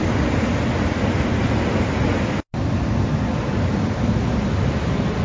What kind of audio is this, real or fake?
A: real